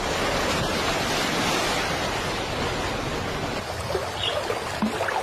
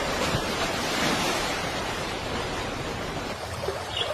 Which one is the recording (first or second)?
first